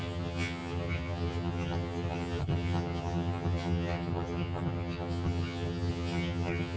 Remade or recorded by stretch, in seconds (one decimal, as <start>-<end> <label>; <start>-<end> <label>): 0.0-6.8 remade